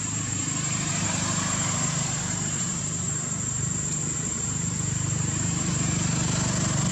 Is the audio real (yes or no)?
no